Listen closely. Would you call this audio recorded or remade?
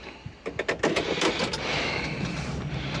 recorded